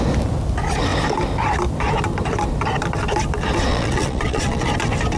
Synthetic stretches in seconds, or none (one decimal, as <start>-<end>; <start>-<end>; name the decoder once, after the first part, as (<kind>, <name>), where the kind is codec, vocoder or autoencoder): 3.7-4.7 (vocoder, Vocos)

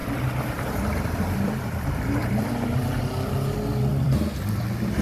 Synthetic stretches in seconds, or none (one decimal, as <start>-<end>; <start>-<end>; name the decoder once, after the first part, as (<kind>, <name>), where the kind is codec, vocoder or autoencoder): 0.0-3.0 (vocoder, BigVGAN v2); 3.9-4.6